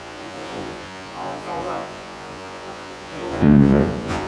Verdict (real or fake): fake